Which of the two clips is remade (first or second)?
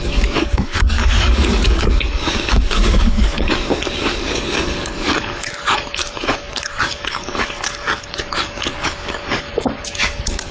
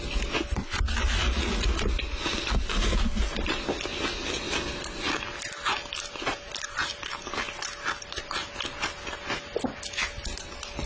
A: first